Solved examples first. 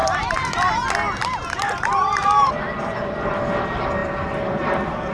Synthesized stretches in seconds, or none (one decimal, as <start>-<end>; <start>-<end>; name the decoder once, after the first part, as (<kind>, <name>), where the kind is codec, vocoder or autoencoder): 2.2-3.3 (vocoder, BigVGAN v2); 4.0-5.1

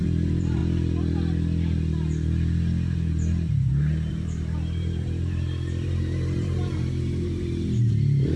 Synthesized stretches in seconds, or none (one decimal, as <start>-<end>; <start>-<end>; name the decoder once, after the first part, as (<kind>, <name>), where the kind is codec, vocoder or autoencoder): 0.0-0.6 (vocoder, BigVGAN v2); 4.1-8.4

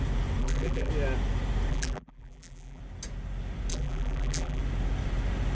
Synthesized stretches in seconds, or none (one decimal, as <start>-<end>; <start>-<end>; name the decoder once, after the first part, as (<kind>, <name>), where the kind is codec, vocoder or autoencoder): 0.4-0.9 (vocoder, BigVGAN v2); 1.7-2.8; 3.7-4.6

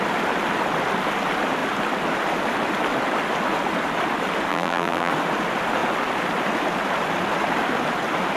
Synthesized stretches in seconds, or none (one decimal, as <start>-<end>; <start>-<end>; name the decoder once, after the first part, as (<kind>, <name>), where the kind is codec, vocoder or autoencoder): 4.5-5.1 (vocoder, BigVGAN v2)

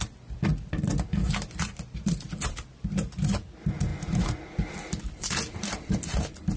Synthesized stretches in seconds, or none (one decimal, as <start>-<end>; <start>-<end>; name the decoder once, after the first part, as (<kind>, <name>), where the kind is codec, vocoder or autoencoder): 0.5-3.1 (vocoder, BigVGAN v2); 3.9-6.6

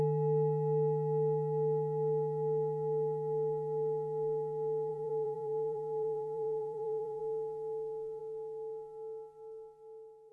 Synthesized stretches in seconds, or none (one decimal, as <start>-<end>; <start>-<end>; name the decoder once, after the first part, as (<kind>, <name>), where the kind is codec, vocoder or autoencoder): 4.9-7.2 (vocoder, BigVGAN v2)

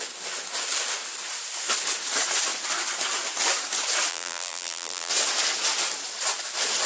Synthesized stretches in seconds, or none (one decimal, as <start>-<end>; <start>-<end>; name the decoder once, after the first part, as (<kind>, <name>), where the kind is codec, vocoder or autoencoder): 4.1-5.1 (vocoder, BigVGAN v2)